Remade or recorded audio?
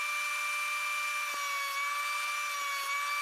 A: recorded